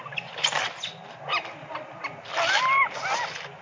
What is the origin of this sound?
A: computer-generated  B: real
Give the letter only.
B